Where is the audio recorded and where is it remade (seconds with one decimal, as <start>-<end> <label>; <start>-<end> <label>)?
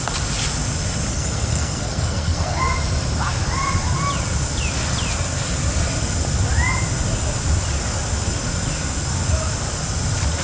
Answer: 0.0-1.1 recorded; 1.1-2.6 remade; 2.6-10.4 recorded